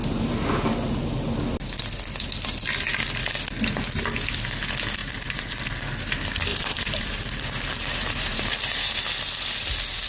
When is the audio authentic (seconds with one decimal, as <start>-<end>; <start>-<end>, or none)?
0.0-5.0; 5.6-6.5; 8.9-10.1